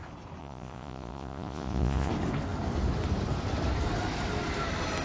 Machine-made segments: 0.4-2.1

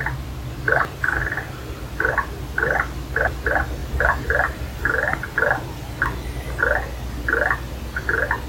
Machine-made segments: none

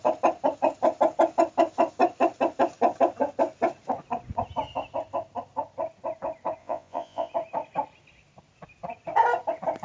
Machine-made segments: 6.6-7.3

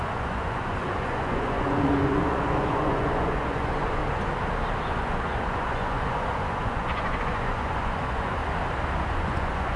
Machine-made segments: 0.0-4.0; 4.8-8.4; 9.0-9.8

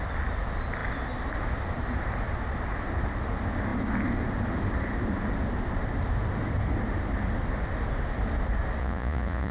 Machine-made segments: 8.8-9.5

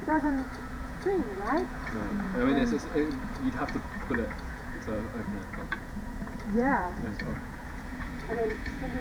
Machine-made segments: 0.0-2.6; 3.2-9.0